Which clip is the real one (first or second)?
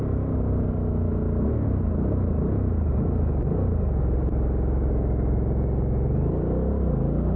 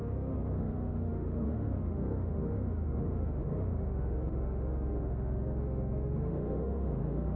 first